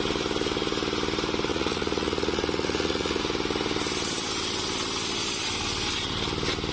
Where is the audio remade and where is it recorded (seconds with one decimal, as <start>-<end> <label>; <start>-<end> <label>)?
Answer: 0.0-1.5 recorded; 1.5-3.2 remade; 3.2-6.7 recorded